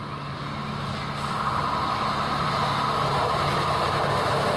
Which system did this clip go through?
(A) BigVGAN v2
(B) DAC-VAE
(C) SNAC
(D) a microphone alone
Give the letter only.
D